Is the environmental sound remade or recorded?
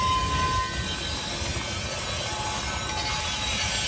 recorded